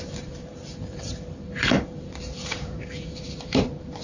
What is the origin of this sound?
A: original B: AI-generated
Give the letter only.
B